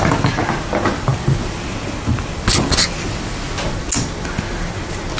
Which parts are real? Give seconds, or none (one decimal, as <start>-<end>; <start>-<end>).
0.0-5.2